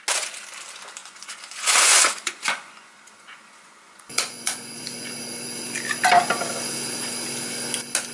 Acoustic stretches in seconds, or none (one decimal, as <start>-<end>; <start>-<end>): 0.0-1.0; 5.2-8.1